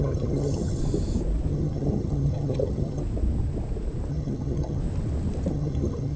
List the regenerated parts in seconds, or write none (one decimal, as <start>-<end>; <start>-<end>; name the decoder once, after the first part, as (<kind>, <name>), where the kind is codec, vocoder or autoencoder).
0.0-0.8 (vocoder, HiFi-GAN); 1.5-3.0; 4.1-4.8; 5.5-6.2